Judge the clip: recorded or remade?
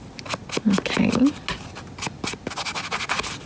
recorded